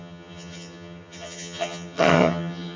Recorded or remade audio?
remade